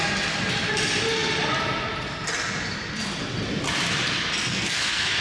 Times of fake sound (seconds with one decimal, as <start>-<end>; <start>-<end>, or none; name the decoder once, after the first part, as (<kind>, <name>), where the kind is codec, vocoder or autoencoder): 4.5-5.2 (codec, SNAC)